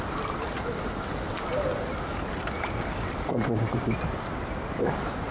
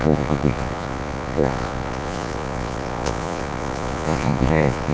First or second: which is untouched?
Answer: first